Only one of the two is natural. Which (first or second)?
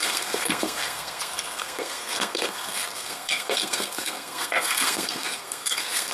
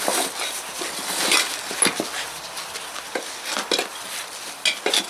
second